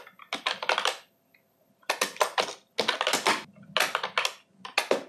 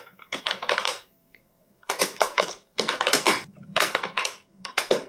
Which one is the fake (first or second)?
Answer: second